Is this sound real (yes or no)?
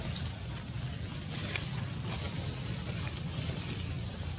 yes